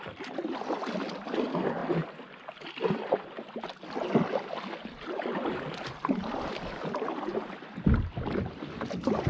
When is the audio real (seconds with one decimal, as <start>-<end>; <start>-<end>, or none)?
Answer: 0.0-9.3